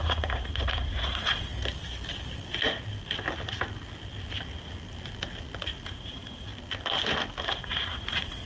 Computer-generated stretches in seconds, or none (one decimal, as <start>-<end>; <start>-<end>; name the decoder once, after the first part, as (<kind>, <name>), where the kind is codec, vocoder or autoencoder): 0.0-1.5 (vocoder, Vocos); 5.9-6.5; 7.4-8.5